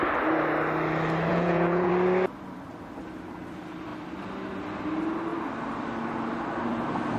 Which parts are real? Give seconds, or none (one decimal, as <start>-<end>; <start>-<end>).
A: 0.0-1.3; 1.9-7.2

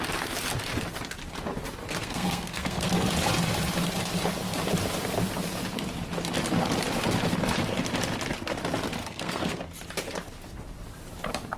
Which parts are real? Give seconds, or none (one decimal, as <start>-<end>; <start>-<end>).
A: 0.0-2.0; 2.9-9.0; 9.6-11.6

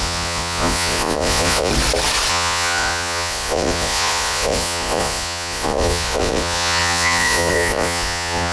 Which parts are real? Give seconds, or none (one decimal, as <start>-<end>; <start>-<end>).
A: 1.7-2.3

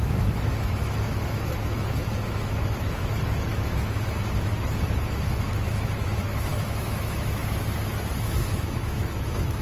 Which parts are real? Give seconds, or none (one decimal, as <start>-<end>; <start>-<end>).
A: 7.4-8.2